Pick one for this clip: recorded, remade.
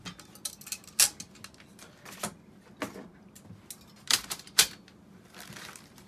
recorded